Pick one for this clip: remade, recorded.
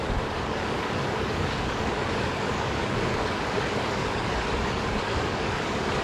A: remade